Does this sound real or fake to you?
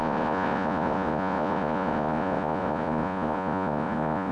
fake